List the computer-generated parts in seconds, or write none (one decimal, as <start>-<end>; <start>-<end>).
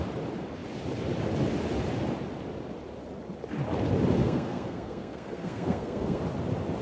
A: 4.2-6.2